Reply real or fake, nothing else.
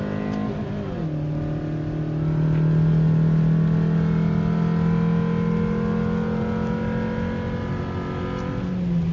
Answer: real